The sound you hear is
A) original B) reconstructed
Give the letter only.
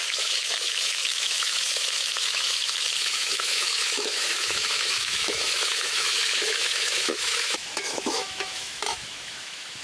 B